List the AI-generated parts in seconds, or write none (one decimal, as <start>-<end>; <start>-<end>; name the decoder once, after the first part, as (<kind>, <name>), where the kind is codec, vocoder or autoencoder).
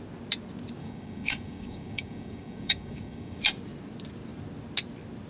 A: 0.8-3.4 (codec, DAC)